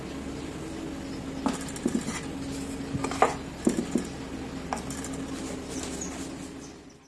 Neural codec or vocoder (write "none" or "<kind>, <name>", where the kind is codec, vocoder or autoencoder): none